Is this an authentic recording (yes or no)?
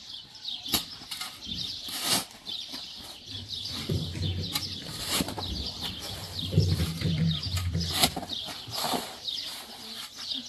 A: no